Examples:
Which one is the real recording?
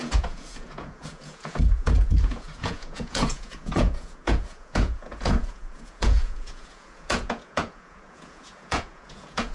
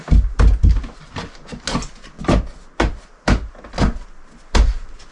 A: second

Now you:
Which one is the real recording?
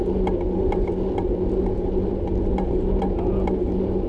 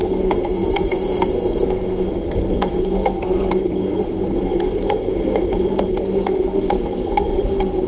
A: first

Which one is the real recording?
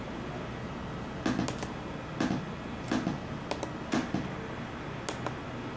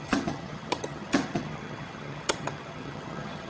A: first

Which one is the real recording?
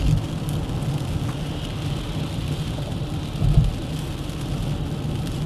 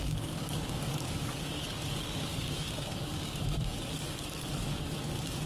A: first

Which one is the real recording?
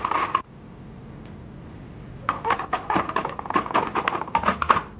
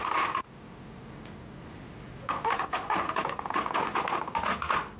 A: second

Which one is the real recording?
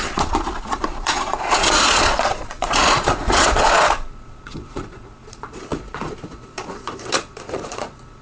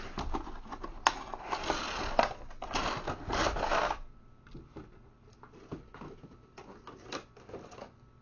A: second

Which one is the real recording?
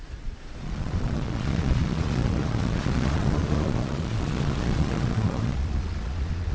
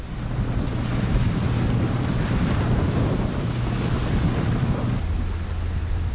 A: second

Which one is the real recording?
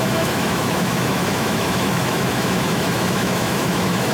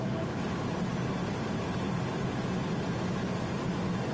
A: second